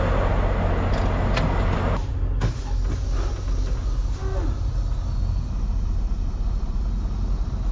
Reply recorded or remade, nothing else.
recorded